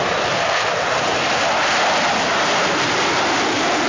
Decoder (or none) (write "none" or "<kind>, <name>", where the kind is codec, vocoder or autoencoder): vocoder, BigVGAN v2